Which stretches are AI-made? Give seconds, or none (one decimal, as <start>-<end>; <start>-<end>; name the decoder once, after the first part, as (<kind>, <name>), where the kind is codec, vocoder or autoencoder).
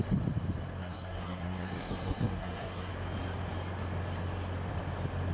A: 0.8-2.9 (codec, SNAC)